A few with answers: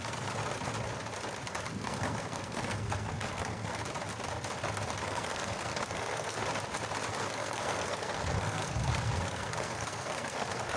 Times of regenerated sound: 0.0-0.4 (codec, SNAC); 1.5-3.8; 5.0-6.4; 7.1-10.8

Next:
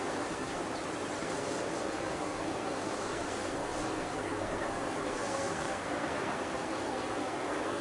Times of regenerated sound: 0.0-0.6 (codec, SNAC); 1.2-7.8

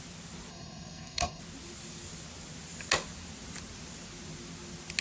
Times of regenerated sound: 0.5-1.4 (codec, SNAC)

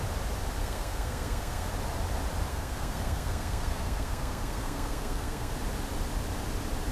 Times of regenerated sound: 0.6-1.7 (codec, SNAC); 2.5-5.5

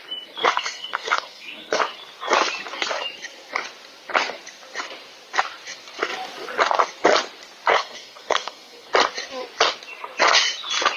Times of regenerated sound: 0.4-1.8 (codec, SNAC); 7.7-8.9

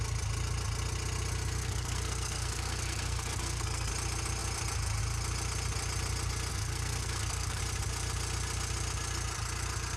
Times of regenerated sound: 1.6-3.9 (codec, SNAC); 6.5-7.6

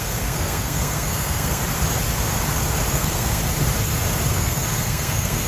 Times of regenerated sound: 0.0-1.6 (codec, SNAC); 2.9-3.4; 4.3-5.5